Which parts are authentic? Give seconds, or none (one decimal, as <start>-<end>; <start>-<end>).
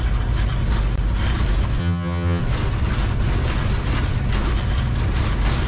0.0-1.8; 2.4-5.7